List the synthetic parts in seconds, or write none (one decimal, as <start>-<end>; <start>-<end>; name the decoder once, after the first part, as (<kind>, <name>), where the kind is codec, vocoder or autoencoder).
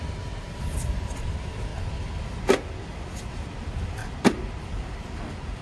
0.0-1.7 (vocoder, BigVGAN v2); 3.3-4.0